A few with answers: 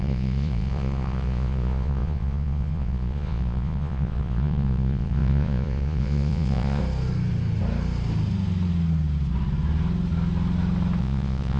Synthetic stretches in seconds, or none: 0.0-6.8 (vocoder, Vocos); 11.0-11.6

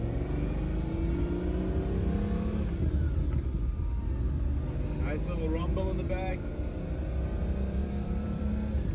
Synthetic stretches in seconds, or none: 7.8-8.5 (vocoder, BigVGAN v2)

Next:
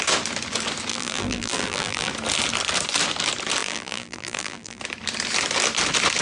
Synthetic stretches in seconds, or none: 0.9-2.1 (vocoder, BigVGAN v2); 3.6-4.8

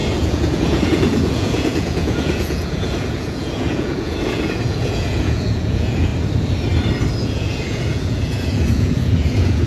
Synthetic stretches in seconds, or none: 0.0-6.1 (vocoder, Vocos); 7.2-9.7

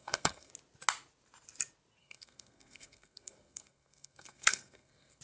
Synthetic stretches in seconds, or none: 0.0-0.5 (codec, SNAC); 2.0-5.2

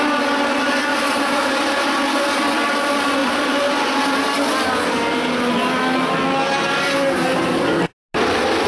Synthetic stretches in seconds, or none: 0.9-1.5 (vocoder, BigVGAN v2)

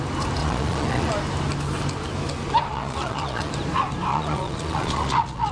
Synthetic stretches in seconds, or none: 0.4-1.1 (vocoder, Vocos); 2.7-3.5; 4.1-5.5